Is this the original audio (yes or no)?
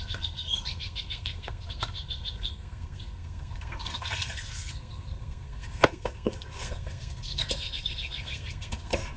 no